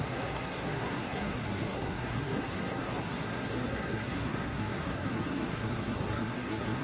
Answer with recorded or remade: remade